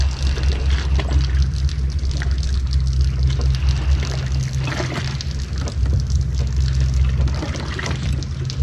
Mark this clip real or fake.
real